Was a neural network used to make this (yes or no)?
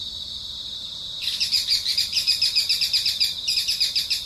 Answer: no